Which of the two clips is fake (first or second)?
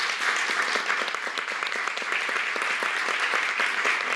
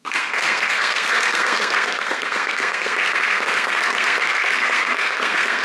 second